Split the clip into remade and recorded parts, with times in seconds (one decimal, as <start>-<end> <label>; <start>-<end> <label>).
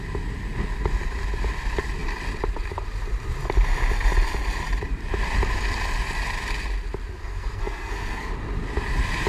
0.0-7.2 recorded; 7.2-8.3 remade; 8.3-9.3 recorded